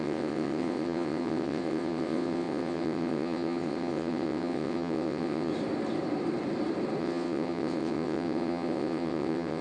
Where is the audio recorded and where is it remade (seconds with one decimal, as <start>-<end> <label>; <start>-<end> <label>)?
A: 0.0-5.5 remade; 5.5-7.0 recorded; 7.0-9.6 remade

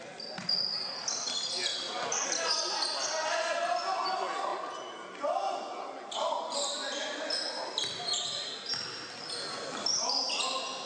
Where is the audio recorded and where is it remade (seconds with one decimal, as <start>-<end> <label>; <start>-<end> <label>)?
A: 0.0-10.9 recorded

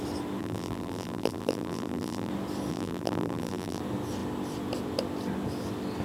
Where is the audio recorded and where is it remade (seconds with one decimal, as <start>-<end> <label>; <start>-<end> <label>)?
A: 0.0-0.4 recorded; 0.4-2.3 remade; 2.3-2.7 recorded; 2.7-3.8 remade; 3.8-6.0 recorded

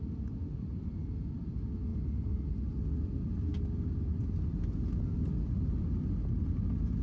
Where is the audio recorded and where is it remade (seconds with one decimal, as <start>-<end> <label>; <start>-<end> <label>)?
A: 0.0-7.0 recorded

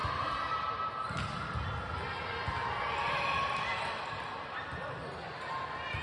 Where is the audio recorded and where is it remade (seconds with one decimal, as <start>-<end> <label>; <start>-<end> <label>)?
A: 0.0-6.0 recorded

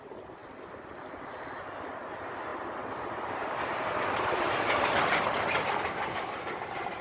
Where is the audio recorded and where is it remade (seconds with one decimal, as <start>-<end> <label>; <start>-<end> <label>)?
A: 0.0-7.0 remade

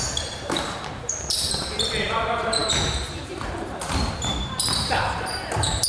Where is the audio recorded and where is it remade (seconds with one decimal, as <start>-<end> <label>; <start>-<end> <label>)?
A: 0.0-5.9 remade